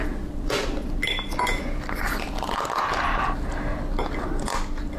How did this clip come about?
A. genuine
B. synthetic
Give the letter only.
A